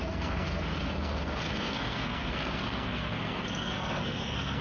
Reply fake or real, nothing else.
fake